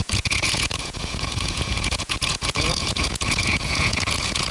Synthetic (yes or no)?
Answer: yes